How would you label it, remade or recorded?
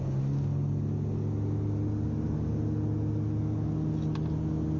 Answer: recorded